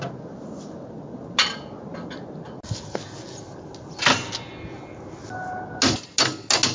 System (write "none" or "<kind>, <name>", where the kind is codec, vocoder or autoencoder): none